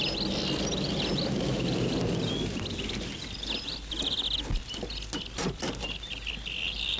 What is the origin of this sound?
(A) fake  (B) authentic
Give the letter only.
B